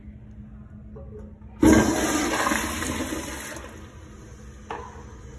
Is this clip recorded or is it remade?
recorded